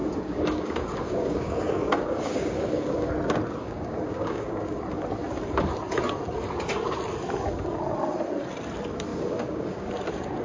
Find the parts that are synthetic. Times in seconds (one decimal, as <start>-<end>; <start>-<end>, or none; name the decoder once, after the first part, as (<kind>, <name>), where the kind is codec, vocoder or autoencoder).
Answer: 0.0-3.1 (codec, DAC); 3.6-4.8; 9.1-9.9